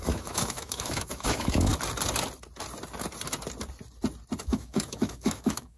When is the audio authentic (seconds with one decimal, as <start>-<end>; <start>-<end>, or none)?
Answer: 1.7-4.4